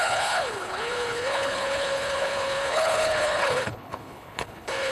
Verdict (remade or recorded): remade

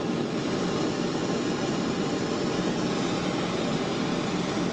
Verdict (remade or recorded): recorded